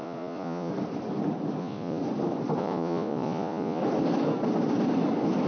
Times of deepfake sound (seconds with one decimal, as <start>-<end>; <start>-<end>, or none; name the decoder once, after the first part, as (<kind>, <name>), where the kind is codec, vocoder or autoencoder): 0.0-0.7 (vocoder, Vocos); 1.6-2.0; 2.6-3.8